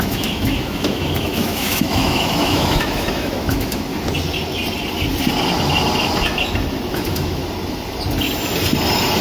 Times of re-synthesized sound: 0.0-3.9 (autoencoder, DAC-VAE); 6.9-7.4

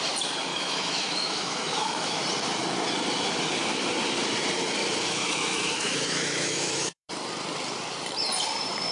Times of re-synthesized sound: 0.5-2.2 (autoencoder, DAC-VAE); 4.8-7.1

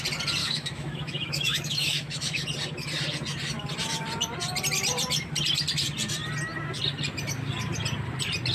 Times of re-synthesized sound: 0.4-2.4 (autoencoder, DAC-VAE)

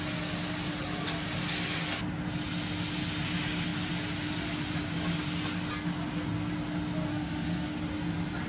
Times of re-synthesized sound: 7.1-7.7 (autoencoder, DAC-VAE)

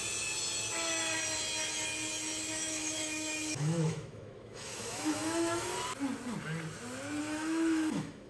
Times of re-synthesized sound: 2.5-5.7 (autoencoder, DAC-VAE); 7.2-8.3

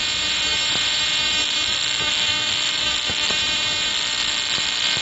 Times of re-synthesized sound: 1.4-3.3 (autoencoder, DAC-VAE); 3.9-5.0

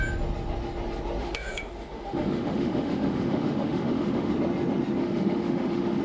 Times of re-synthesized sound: 1.2-4.3 (autoencoder, DAC-VAE); 5.0-6.0